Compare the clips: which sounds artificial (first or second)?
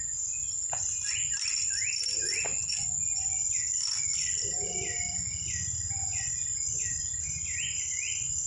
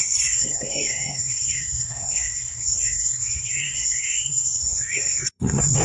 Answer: second